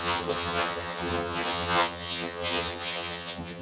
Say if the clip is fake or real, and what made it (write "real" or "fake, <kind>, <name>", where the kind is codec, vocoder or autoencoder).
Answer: fake, vocoder, HiFi-GAN